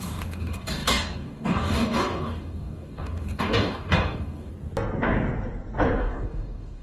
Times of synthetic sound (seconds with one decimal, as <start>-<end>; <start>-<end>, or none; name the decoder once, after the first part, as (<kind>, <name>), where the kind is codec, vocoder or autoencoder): 0.0-4.5 (codec, DAC); 6.0-6.8